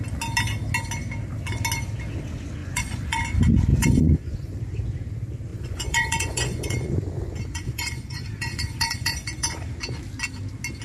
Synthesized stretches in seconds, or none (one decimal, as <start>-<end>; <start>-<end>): 2.6-3.2; 3.7-4.6; 5.5-9.5